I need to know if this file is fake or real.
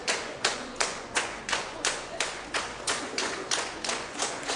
fake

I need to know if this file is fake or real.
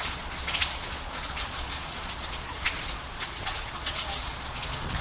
fake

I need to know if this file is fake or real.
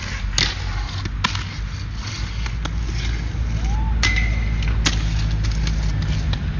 real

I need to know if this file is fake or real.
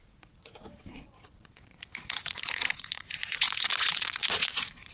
fake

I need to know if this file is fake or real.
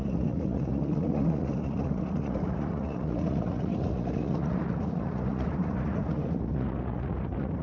fake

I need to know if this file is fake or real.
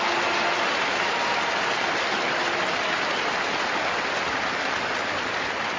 real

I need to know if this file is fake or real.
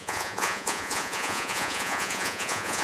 fake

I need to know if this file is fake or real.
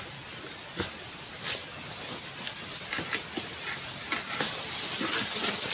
real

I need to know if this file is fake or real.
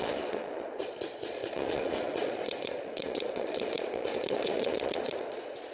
fake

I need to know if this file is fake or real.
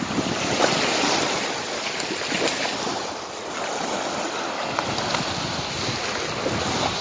real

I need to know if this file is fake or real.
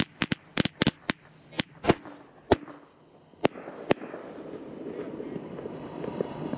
real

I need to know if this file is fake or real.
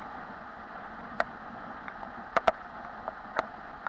fake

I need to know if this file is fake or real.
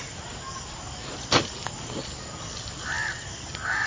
real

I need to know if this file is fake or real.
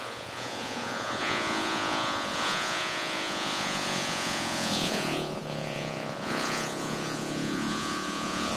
fake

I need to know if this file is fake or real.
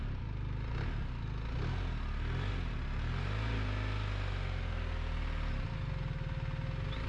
real